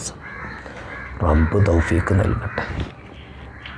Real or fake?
real